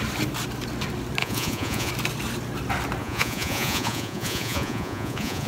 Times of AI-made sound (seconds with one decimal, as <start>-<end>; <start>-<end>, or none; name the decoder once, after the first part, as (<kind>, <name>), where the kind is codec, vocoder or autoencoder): 1.2-1.9 (vocoder, Vocos); 3.0-5.5